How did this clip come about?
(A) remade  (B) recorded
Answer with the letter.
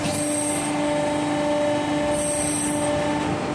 B